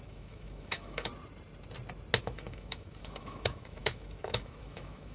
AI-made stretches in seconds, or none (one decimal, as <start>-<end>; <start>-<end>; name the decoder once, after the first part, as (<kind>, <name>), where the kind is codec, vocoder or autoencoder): 0.0-1.1 (autoencoder, DAC-VAE); 2.2-5.1